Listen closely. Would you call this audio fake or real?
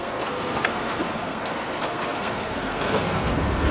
fake